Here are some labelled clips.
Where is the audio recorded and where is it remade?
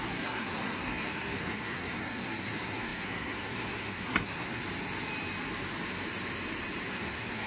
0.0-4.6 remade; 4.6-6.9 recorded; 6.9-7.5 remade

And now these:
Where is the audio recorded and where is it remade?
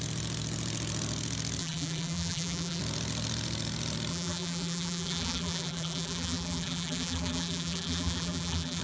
0.0-1.6 recorded; 1.6-2.8 remade; 2.8-4.1 recorded; 4.1-8.8 remade